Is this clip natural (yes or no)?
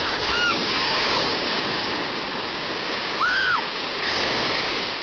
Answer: no